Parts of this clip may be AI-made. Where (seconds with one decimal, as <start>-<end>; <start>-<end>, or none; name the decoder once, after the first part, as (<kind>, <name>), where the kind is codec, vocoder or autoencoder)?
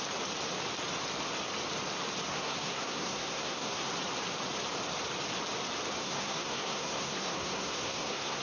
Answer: 2.3-3.9 (codec, SNAC); 6.0-8.4